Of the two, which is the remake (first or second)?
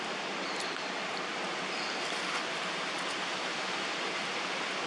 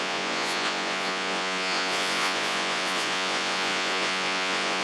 second